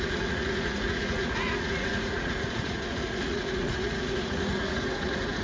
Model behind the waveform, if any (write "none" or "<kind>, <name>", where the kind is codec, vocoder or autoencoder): vocoder, Vocos